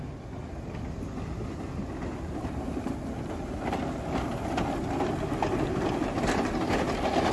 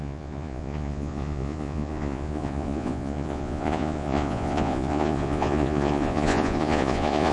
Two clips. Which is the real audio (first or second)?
first